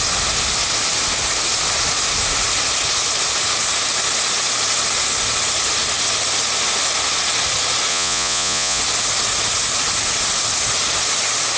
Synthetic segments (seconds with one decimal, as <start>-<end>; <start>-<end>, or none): 7.9-8.8